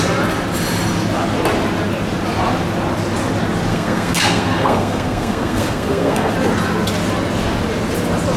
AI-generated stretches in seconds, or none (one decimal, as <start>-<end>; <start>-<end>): 3.7-6.3